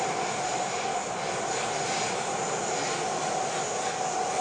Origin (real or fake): real